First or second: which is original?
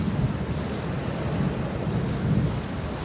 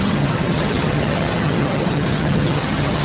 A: first